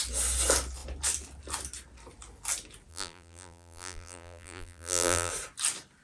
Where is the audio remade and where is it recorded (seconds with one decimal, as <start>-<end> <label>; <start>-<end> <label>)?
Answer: 0.0-2.9 recorded; 2.9-5.3 remade; 5.3-6.0 recorded

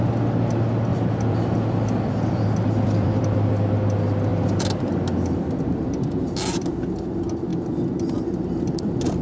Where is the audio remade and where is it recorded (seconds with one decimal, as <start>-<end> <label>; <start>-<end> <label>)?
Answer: 0.0-0.9 recorded; 0.9-3.5 remade; 3.5-4.3 recorded; 4.3-4.9 remade; 4.9-7.5 recorded; 7.5-9.2 remade